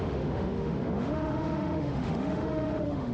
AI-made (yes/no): yes